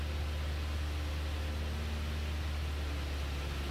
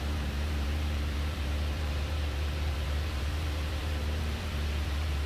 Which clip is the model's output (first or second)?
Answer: second